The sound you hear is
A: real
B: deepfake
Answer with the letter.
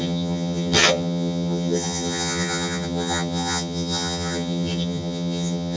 B